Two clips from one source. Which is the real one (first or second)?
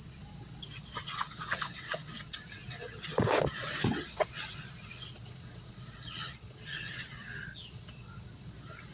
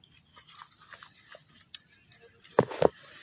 second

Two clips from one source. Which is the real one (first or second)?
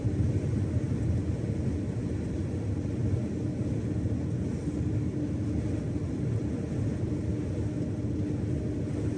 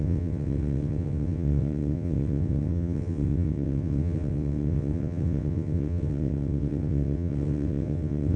first